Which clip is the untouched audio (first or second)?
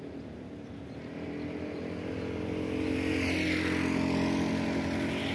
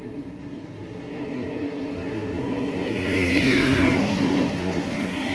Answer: first